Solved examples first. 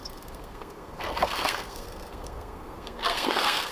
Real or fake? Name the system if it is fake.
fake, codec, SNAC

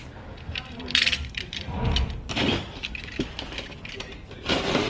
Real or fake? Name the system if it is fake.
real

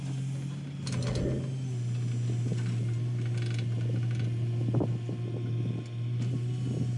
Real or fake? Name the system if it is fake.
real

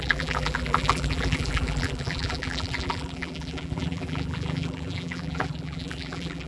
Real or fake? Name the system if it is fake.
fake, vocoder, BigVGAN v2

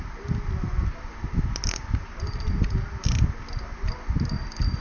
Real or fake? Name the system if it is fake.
real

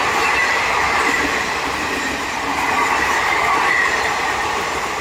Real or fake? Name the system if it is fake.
fake, vocoder, BigVGAN v2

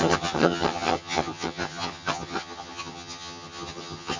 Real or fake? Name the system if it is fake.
fake, vocoder, HiFi-GAN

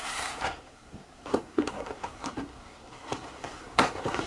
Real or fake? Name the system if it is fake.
fake, codec, SNAC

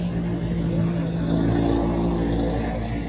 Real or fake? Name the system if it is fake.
real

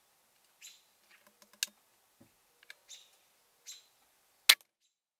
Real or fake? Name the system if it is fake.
real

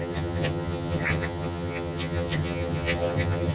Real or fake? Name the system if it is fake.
fake, vocoder, HiFi-GAN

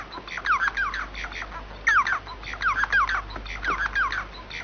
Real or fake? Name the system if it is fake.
real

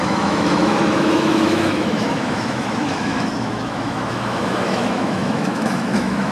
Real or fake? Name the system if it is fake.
fake, autoencoder, DAC-VAE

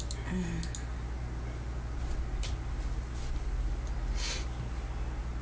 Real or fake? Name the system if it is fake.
real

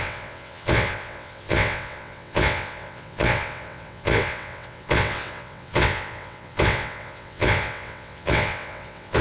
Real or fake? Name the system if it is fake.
fake, vocoder, WaveNeXt